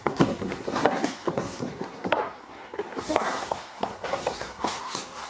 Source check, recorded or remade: remade